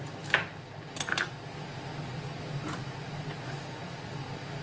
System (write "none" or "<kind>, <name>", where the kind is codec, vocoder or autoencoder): none